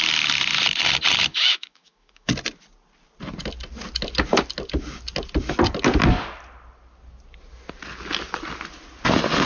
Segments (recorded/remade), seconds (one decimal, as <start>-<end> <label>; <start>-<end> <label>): 0.0-1.3 recorded; 1.3-2.3 remade; 2.3-9.5 recorded